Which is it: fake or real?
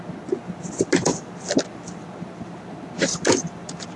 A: real